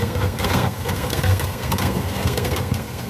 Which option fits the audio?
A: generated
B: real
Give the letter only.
A